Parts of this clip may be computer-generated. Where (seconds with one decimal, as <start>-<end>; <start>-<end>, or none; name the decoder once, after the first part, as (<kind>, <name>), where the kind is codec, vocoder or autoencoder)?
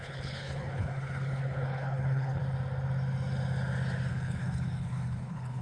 0.0-2.4 (codec, HILCodec); 4.1-5.6